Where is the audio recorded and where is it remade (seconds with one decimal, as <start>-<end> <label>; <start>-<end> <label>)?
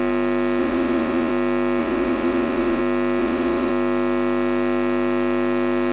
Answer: 0.0-0.6 recorded; 0.6-1.3 remade; 1.3-1.8 recorded; 1.8-2.8 remade; 2.8-3.2 recorded; 3.2-3.7 remade; 3.7-5.9 recorded